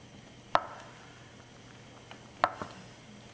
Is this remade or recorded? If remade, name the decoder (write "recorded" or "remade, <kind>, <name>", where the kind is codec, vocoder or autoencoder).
recorded